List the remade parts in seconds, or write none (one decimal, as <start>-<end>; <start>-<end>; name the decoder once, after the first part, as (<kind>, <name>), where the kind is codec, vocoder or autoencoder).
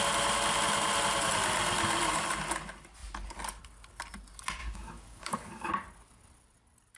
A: 4.6-5.7 (codec, DAC)